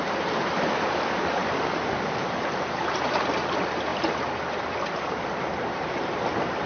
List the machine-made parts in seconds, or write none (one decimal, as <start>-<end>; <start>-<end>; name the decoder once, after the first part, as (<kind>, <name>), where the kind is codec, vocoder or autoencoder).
none